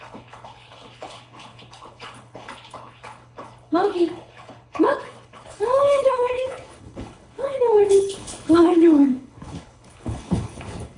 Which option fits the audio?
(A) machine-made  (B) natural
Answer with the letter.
A